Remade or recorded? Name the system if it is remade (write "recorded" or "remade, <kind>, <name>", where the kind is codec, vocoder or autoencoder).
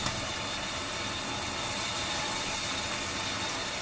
recorded